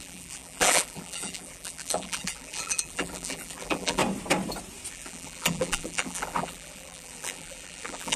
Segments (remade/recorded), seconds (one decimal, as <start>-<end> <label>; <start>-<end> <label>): 0.0-4.0 remade; 4.0-4.9 recorded; 4.9-8.2 remade